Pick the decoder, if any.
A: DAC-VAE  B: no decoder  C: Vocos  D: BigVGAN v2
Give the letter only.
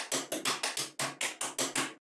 B